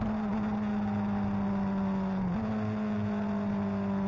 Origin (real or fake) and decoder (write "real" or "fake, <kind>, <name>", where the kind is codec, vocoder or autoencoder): real